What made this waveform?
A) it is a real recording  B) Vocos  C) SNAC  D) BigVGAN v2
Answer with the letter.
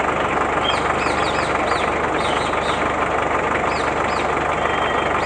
A